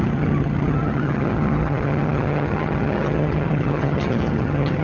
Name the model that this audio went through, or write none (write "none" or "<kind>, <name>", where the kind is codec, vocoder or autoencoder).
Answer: vocoder, HiFi-GAN